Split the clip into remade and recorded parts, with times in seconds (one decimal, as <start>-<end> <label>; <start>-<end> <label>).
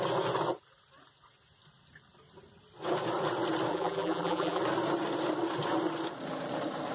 0.0-3.7 recorded; 3.7-4.6 remade; 4.6-6.9 recorded